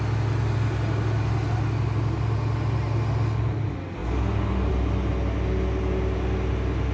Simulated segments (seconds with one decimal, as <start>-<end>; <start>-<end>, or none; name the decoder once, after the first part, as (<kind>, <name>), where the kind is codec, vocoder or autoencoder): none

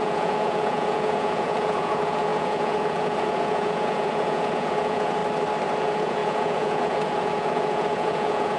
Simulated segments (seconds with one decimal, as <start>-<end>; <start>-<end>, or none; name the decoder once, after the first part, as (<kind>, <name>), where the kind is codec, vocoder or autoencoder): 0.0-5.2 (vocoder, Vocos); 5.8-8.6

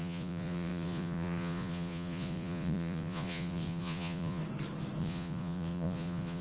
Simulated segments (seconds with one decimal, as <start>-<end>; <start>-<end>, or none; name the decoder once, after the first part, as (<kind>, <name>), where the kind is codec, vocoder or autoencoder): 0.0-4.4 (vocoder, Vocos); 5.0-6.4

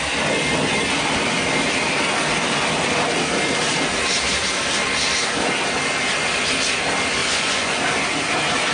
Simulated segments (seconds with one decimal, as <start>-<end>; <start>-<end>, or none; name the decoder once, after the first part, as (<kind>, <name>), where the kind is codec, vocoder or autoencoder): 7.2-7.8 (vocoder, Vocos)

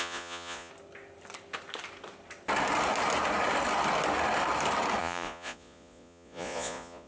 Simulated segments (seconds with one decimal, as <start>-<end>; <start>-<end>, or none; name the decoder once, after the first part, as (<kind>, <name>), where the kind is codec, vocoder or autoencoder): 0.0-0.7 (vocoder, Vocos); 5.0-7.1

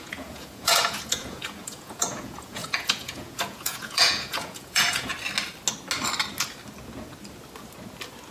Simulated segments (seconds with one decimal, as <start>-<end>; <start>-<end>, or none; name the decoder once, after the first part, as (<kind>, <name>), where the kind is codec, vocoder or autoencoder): 0.0-5.1 (vocoder, Vocos)

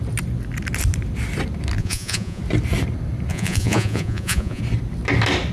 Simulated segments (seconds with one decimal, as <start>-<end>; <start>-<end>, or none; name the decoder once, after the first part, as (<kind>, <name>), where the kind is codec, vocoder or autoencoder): 1.8-2.4 (vocoder, Vocos); 3.3-4.6